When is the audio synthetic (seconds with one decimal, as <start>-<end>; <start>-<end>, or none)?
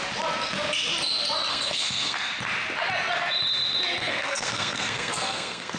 1.5-2.3; 4.0-5.8